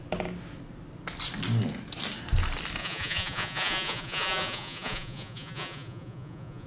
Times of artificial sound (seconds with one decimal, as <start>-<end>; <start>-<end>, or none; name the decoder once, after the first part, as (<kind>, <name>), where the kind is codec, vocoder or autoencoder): 2.8-6.7 (vocoder, Vocos)